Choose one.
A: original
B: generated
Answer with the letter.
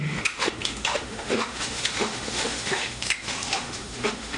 B